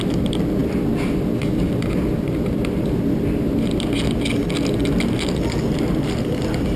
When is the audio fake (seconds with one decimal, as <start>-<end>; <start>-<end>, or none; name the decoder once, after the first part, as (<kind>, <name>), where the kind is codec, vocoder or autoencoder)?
none